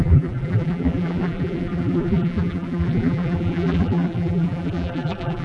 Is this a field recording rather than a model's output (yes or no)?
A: no